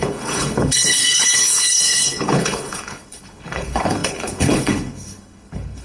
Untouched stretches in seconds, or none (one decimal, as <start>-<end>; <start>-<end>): none